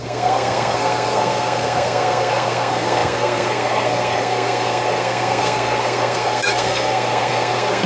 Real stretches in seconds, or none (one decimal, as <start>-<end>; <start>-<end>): none